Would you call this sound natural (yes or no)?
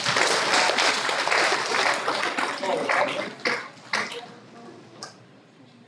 yes